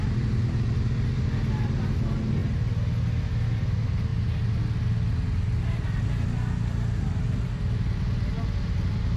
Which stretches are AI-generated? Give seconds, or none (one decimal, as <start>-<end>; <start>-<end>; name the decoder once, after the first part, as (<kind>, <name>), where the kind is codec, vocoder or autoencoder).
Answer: none